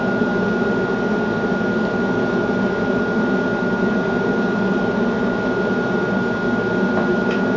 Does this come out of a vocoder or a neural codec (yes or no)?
no